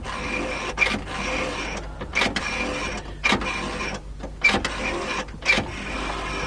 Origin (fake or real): real